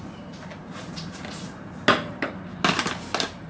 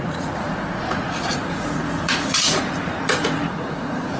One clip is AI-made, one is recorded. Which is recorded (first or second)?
first